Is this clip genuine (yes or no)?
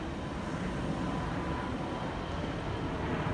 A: yes